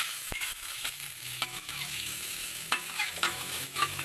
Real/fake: fake